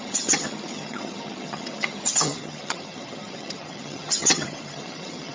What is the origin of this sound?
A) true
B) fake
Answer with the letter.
B